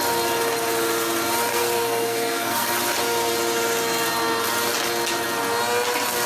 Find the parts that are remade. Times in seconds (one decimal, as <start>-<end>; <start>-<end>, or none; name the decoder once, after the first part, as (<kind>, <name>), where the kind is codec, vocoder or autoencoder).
1.5-2.7 (codec, SNAC)